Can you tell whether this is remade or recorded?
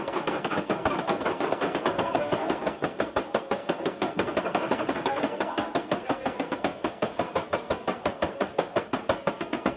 remade